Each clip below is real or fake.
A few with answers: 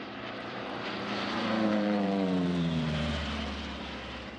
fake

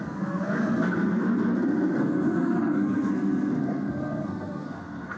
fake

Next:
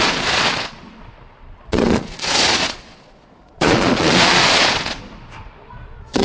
fake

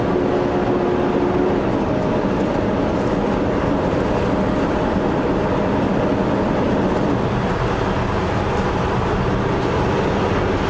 real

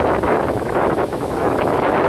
fake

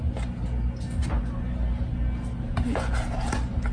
real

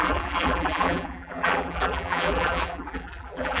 fake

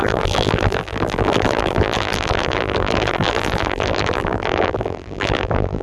fake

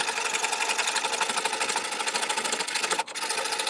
real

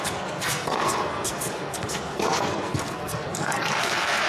fake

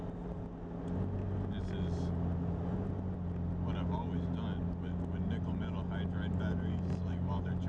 real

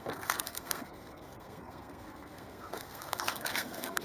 fake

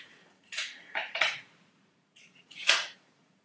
fake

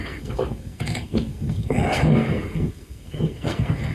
fake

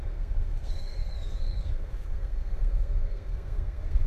fake